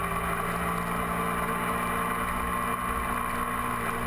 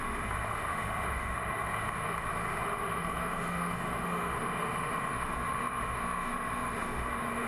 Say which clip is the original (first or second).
first